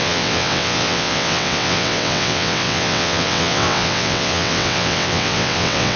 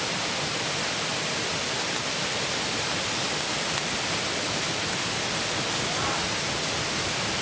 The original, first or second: second